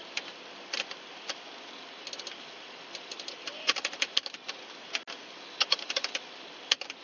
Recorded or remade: recorded